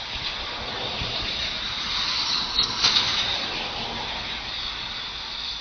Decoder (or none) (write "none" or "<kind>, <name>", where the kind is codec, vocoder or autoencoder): none